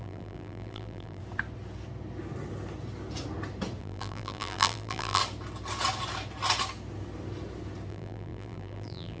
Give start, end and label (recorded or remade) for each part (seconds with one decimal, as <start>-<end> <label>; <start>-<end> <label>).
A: 0.0-1.2 remade; 1.2-3.8 recorded; 3.8-5.2 remade; 5.2-7.9 recorded; 7.9-9.2 remade